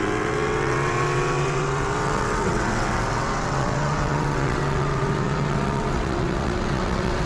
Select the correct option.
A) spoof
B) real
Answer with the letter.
A